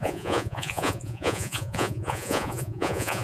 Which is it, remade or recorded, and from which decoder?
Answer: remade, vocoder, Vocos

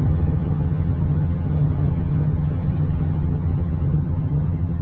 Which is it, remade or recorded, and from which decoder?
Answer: remade, vocoder, HiFi-GAN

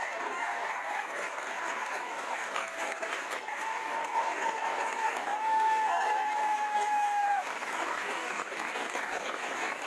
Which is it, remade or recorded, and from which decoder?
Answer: remade, codec, DAC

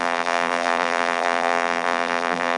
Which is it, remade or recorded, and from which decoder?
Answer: remade, vocoder, BigVGAN v2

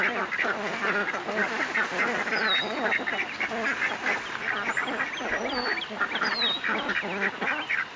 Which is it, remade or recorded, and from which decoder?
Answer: recorded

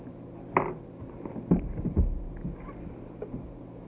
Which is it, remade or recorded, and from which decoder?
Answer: recorded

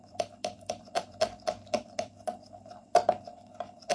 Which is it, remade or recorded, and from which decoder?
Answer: remade, vocoder, BigVGAN v2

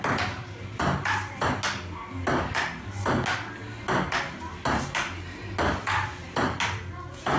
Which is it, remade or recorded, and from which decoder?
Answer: recorded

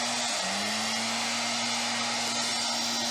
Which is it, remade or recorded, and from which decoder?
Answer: recorded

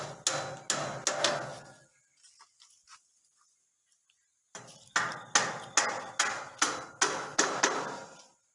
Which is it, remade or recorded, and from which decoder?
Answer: recorded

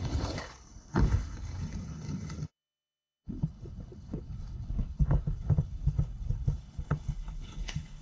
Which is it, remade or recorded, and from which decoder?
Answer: remade, codec, HILCodec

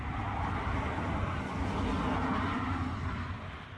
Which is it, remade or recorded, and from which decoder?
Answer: recorded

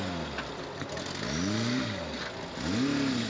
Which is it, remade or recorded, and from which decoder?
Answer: recorded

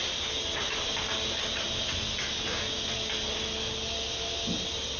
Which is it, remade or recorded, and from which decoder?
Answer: recorded